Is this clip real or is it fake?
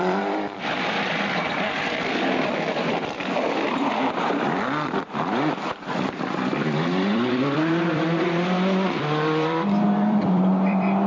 fake